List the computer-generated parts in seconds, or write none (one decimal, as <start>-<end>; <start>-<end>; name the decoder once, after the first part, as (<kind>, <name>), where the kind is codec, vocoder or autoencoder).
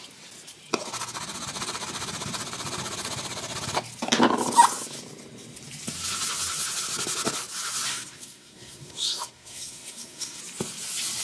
7.9-10.4 (codec, SNAC)